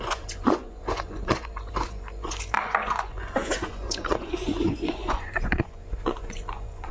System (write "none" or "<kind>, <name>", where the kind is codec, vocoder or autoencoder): vocoder, Vocos